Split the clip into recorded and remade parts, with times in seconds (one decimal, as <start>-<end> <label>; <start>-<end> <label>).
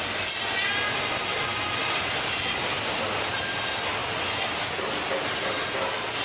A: 0.0-6.2 recorded